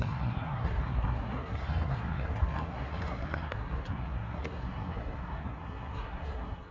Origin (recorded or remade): remade